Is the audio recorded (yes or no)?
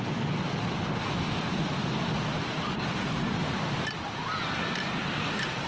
no